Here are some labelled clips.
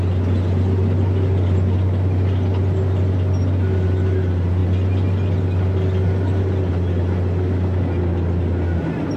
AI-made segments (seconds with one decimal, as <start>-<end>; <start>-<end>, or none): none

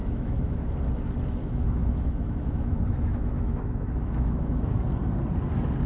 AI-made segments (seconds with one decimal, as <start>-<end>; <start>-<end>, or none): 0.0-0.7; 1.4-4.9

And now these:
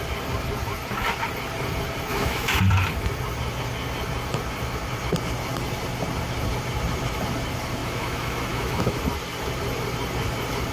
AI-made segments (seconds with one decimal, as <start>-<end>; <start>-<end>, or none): 2.1-2.6; 7.8-9.0